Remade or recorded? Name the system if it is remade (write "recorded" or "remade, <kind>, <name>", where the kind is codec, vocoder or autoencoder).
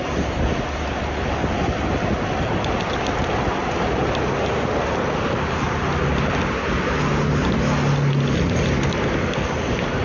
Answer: recorded